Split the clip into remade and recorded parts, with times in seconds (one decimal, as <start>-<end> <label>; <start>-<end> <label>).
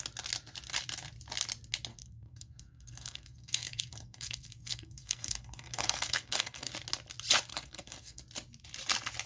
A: 0.0-1.9 recorded; 1.9-6.7 remade; 6.7-7.5 recorded; 7.5-8.2 remade; 8.2-9.3 recorded